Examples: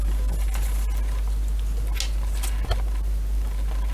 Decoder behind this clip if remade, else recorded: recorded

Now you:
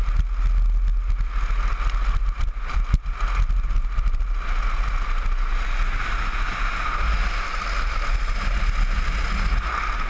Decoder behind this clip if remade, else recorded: recorded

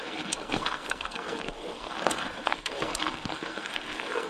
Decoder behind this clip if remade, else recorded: remade, codec, SNAC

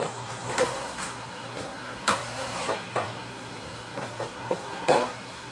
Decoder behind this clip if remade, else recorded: remade, codec, SNAC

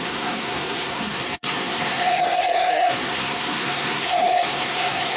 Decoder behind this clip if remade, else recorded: remade, codec, SNAC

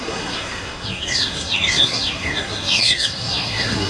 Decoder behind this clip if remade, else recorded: remade, codec, SNAC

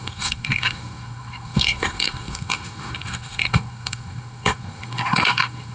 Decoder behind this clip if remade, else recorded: remade, codec, SNAC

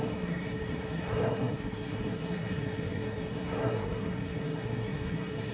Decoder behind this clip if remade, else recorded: remade, codec, SNAC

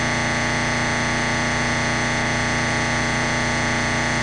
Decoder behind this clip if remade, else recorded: recorded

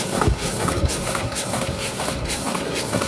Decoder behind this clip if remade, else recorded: remade, codec, SNAC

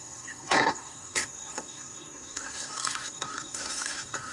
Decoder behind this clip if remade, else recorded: remade, codec, SNAC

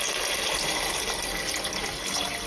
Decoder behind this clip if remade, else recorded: recorded